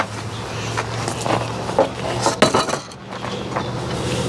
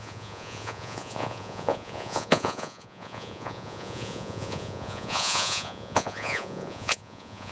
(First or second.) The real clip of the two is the first